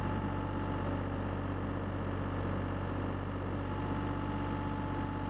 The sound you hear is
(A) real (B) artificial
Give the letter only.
A